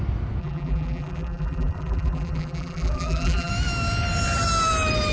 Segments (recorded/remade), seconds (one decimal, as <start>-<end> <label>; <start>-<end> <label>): 0.0-0.4 recorded; 0.4-3.5 remade; 3.5-5.1 recorded